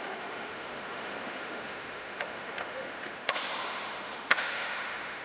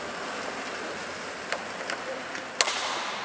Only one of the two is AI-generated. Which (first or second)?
first